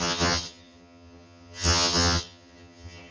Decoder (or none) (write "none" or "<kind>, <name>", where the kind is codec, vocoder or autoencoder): vocoder, HiFi-GAN